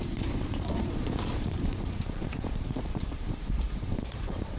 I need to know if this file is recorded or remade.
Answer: remade